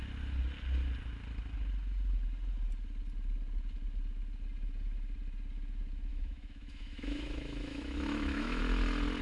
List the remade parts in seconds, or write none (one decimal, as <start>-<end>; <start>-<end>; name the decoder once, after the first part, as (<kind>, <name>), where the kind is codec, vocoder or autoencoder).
6.1-8.6 (autoencoder, DAC-VAE)